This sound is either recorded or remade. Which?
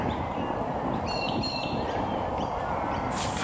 remade